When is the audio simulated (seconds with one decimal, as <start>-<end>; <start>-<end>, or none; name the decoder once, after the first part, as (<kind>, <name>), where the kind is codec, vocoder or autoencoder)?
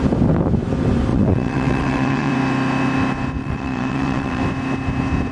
1.1-2.3 (vocoder, WaveNeXt); 3.4-4.4